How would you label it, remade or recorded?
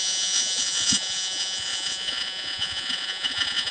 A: remade